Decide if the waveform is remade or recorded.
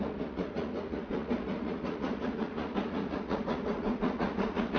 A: remade